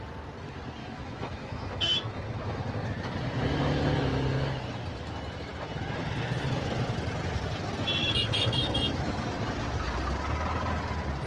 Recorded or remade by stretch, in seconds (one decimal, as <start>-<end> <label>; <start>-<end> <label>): 0.0-0.8 recorded; 0.8-2.9 remade; 2.9-8.0 recorded; 8.0-9.4 remade; 9.4-11.3 recorded